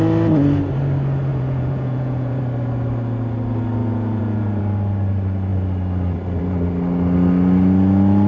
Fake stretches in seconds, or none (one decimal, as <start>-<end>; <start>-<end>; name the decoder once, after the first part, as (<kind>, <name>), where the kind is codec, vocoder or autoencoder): 1.3-2.4 (vocoder, Vocos); 3.8-4.6